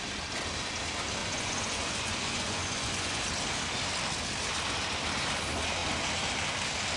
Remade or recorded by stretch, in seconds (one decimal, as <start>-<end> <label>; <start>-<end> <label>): 0.0-1.2 recorded; 1.2-3.2 remade; 3.2-7.0 recorded